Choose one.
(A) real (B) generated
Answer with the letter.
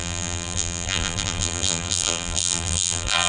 B